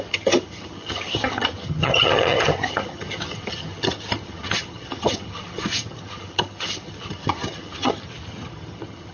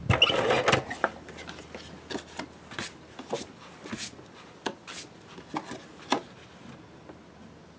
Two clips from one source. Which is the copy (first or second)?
first